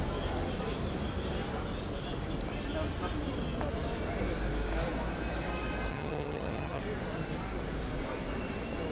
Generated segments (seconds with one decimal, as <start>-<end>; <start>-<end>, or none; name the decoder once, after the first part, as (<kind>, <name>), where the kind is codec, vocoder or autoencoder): 5.9-6.8 (vocoder, HiFi-GAN)